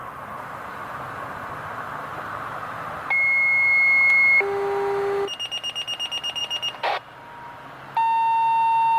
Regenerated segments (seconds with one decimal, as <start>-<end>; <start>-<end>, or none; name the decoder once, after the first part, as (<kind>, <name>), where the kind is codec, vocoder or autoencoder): 0.0-3.1 (vocoder, BigVGAN v2)